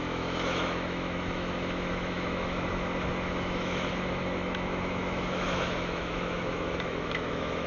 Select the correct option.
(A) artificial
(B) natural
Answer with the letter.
A